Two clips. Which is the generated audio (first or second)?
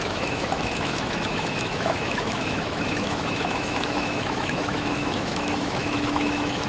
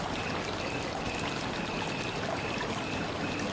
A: first